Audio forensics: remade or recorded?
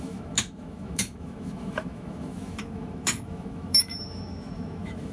remade